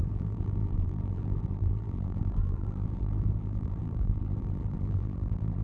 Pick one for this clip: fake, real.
fake